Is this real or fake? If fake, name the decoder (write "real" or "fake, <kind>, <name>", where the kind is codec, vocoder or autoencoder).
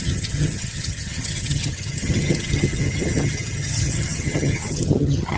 fake, vocoder, HiFi-GAN